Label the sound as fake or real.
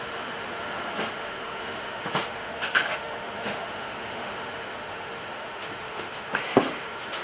fake